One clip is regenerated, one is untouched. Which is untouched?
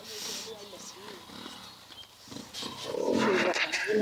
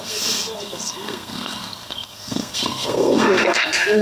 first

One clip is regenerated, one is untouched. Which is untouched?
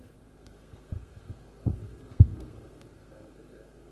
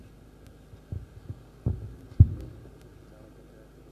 second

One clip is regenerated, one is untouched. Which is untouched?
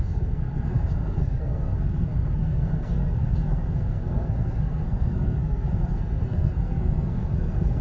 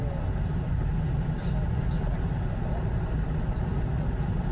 second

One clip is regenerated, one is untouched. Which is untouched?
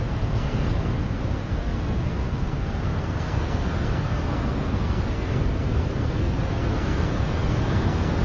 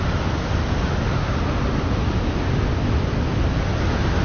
second